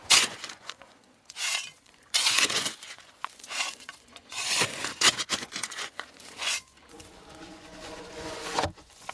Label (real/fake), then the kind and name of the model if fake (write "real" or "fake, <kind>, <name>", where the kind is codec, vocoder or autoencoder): fake, vocoder, Vocos